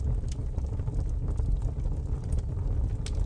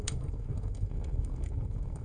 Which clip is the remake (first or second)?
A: second